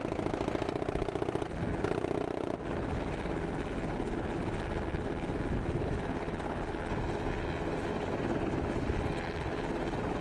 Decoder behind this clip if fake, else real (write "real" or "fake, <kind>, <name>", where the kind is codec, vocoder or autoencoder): real